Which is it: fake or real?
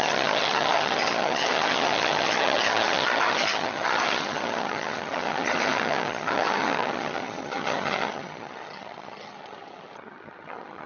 fake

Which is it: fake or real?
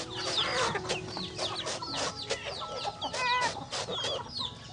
real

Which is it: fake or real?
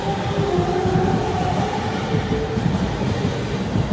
real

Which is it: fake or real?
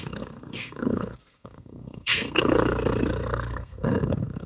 fake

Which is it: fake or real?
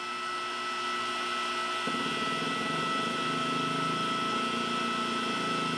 real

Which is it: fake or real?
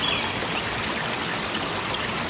real